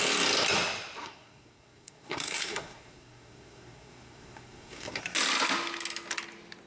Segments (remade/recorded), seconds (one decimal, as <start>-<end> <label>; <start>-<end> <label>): 0.0-1.0 recorded; 1.0-5.0 remade; 5.0-6.7 recorded